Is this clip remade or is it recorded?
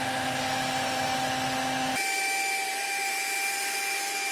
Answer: recorded